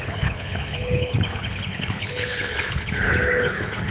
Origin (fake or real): fake